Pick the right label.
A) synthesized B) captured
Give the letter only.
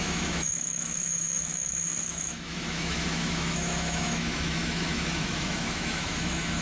A